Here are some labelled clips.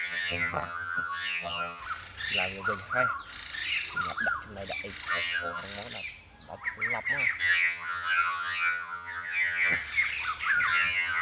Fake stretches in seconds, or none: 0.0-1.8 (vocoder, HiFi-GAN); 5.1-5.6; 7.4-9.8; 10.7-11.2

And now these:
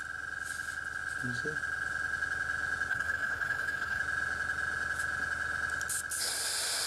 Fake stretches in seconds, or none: 2.9-4.0 (codec, HILCodec)

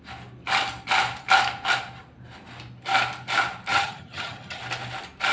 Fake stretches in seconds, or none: 3.7-4.6 (vocoder, HiFi-GAN)

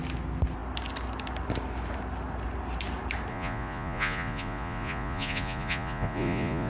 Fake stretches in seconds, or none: 3.3-6.7 (vocoder, Vocos)

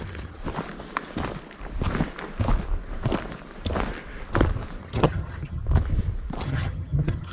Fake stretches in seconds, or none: 0.0-0.4 (vocoder, HiFi-GAN); 4.8-5.6; 6.4-7.3